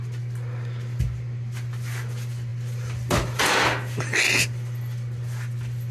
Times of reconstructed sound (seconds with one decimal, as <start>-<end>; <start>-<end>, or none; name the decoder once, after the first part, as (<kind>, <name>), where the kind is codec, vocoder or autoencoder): none